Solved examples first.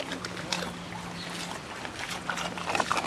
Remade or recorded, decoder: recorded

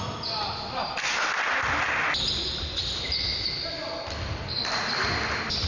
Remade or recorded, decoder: recorded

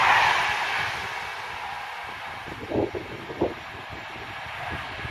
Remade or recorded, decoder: recorded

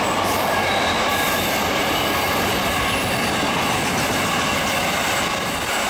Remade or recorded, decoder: recorded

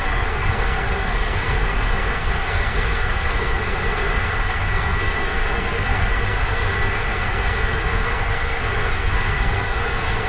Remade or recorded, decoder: remade, codec, SNAC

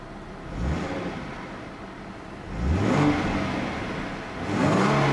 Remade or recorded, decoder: recorded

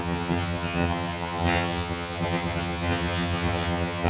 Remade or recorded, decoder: remade, vocoder, HiFi-GAN